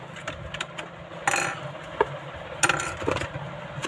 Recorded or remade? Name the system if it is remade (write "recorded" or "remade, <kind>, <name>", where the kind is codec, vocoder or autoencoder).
recorded